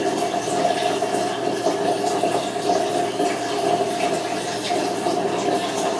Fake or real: real